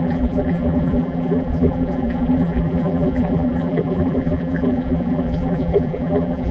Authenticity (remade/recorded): remade